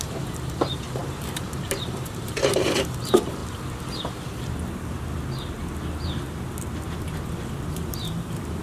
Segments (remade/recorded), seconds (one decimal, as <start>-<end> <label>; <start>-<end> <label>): 0.0-3.4 remade; 3.4-7.9 recorded; 7.9-8.6 remade